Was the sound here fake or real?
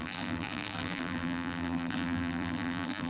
fake